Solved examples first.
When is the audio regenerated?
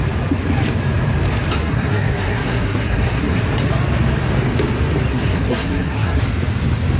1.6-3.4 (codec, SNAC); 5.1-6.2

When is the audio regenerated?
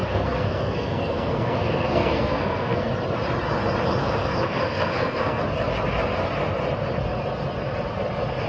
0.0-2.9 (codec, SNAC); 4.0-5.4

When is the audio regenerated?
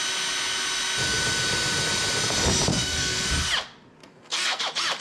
2.7-3.3 (codec, SNAC); 4.0-4.6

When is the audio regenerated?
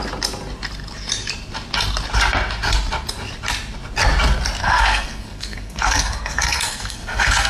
4.6-7.5 (codec, SNAC)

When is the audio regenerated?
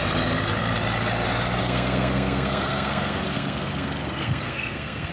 1.6-5.1 (codec, SNAC)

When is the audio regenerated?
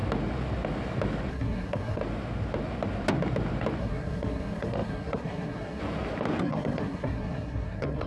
1.3-2.0 (codec, SNAC); 3.8-5.8; 6.4-8.1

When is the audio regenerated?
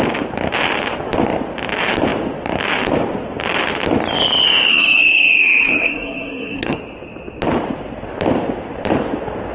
4.7-6.8 (codec, SNAC)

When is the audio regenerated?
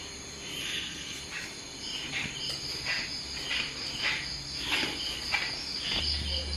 0.6-1.2 (codec, SNAC)